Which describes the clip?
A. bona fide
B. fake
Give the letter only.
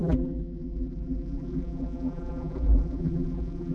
B